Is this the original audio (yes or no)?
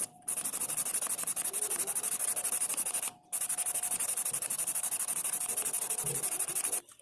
yes